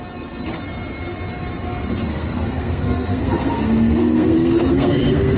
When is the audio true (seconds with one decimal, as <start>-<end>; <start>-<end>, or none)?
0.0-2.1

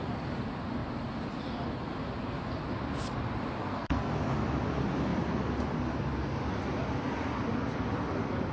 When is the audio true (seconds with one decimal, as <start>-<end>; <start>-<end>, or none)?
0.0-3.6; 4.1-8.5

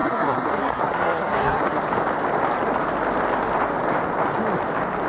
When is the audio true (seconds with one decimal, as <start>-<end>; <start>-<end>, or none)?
1.8-5.1

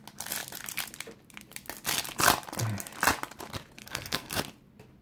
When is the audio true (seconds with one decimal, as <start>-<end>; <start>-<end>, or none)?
0.0-3.8; 4.4-5.0